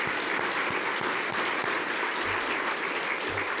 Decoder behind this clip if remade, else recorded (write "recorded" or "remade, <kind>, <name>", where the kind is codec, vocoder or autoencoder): recorded